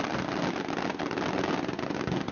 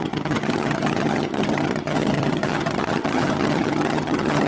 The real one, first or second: first